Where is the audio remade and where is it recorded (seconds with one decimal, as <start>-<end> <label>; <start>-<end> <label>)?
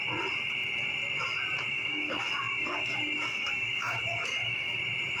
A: 0.0-1.7 recorded; 1.7-4.8 remade; 4.8-5.2 recorded